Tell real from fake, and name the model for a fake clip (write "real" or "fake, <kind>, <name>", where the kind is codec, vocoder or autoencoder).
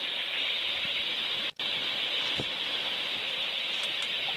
real